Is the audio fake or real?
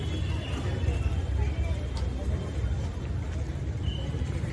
real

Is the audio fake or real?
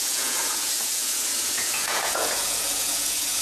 fake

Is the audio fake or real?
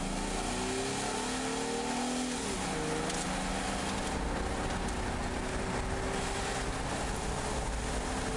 real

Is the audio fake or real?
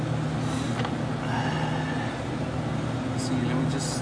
real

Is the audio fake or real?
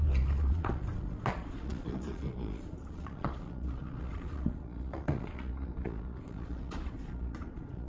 fake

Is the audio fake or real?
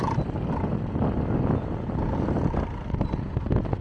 real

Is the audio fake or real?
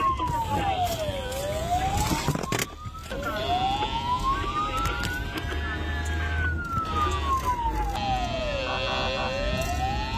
real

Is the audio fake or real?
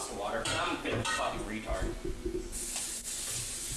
fake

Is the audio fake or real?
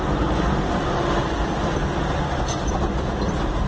real